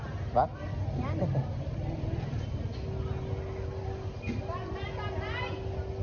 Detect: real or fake real